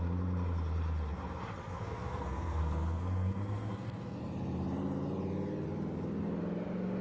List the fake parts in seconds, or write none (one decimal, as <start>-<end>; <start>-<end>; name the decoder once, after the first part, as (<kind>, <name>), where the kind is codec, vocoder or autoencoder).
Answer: 1.6-4.2 (codec, SNAC)